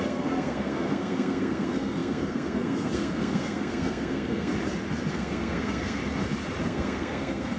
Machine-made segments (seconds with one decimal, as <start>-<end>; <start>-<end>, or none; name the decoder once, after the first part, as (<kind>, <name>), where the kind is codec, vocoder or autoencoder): 0.0-4.5 (codec, SNAC); 5.1-6.0; 6.6-7.6